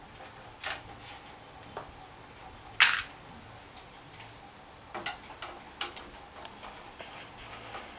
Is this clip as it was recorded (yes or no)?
yes